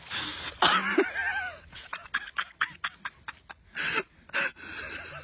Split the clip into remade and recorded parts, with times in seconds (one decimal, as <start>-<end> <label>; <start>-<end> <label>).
0.0-5.2 recorded